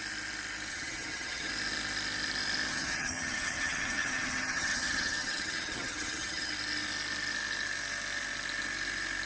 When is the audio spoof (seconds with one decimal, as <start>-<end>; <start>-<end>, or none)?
0.7-1.5; 2.7-6.5